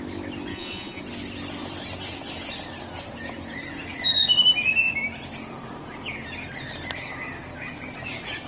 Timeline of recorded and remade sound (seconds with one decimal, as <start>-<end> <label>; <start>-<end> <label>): 0.0-0.5 recorded; 0.5-1.0 remade; 1.0-8.5 recorded